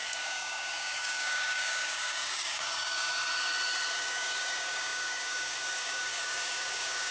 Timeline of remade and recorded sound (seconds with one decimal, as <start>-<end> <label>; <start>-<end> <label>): 0.0-3.1 remade; 3.1-4.0 recorded; 4.0-7.1 remade